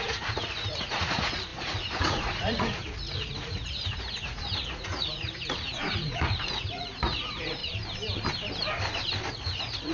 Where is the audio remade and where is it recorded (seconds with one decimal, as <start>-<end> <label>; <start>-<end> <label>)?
0.0-7.6 remade; 7.6-9.3 recorded; 9.3-9.9 remade